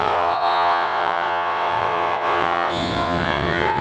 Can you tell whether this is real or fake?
fake